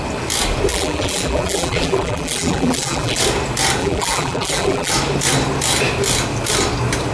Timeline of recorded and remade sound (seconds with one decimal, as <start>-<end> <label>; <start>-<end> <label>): 0.0-0.7 recorded; 0.7-3.2 remade; 3.2-3.8 recorded; 3.8-4.9 remade; 4.9-7.1 recorded